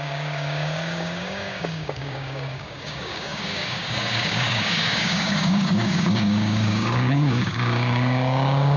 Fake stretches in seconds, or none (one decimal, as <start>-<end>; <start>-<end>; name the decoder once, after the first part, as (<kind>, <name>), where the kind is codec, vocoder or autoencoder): 0.0-8.8 (codec, DAC)